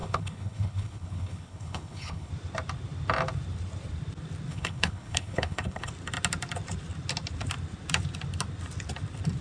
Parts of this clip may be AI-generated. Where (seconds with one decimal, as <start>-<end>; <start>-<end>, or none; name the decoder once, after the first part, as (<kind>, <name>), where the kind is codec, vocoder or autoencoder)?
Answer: 0.0-2.3 (codec, HILCodec); 4.5-5.9